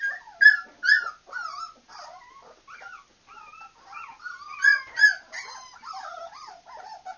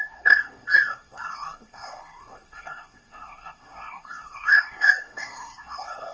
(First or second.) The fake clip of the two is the second